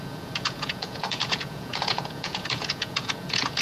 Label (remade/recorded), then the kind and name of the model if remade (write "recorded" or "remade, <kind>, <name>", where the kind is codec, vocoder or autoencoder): remade, vocoder, Vocos